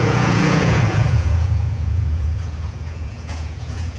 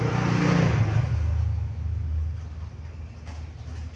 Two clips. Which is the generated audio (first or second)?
first